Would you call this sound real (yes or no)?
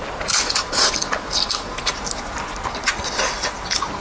yes